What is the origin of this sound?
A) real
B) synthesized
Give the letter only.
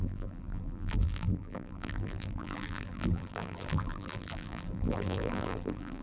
B